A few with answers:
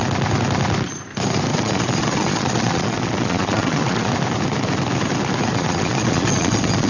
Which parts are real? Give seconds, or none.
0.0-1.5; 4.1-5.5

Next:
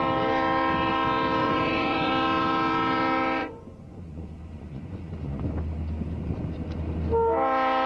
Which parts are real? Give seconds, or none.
0.0-1.4; 2.1-3.4; 5.4-7.9

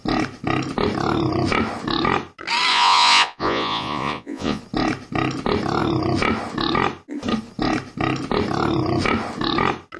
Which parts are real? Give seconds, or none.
0.0-2.7; 4.6-10.0